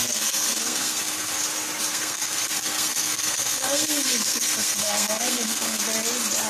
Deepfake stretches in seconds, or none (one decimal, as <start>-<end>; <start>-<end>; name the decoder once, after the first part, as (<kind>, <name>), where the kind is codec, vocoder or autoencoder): 0.0-1.4 (codec, SNAC); 1.9-5.8